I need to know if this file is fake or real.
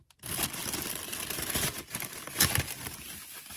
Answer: real